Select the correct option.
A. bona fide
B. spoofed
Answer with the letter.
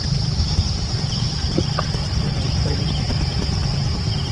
B